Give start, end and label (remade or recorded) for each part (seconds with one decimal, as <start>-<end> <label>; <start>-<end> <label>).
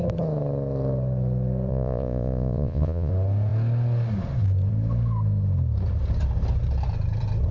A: 0.0-1.7 recorded; 1.7-3.1 remade; 3.1-7.5 recorded